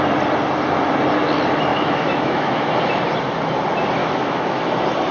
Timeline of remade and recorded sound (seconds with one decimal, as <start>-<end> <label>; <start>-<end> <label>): 0.0-1.7 recorded; 1.7-2.7 remade; 2.7-4.0 recorded; 4.0-4.6 remade; 4.6-5.1 recorded